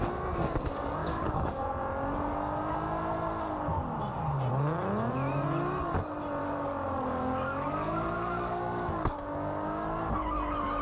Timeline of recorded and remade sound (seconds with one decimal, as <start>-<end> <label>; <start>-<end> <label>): 0.0-1.0 recorded; 1.0-1.8 remade; 1.8-6.4 recorded; 6.4-10.1 remade; 10.1-10.8 recorded